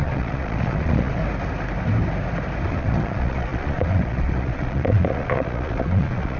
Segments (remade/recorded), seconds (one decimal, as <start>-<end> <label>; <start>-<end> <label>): 0.0-1.2 remade; 1.2-2.7 recorded; 2.7-6.4 remade